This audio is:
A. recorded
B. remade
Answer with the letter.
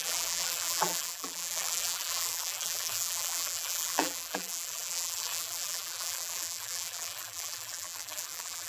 B